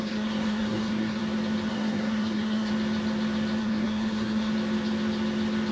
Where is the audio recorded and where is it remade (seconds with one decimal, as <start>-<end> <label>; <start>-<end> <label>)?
0.0-1.2 remade; 1.2-1.7 recorded; 1.7-2.7 remade; 2.7-3.6 recorded; 3.6-4.5 remade; 4.5-5.7 recorded